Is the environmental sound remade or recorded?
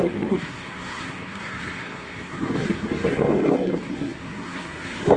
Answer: remade